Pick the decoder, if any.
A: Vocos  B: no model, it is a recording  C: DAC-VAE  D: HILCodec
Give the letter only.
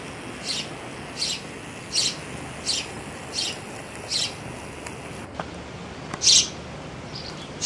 B